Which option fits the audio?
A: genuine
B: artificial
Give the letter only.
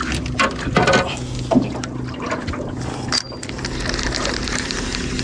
A